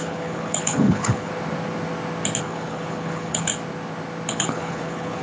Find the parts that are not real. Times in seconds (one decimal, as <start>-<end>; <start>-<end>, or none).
0.0-1.3; 2.4-3.5; 4.3-5.2